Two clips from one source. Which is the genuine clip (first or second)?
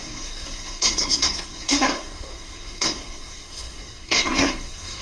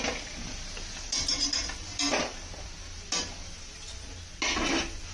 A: second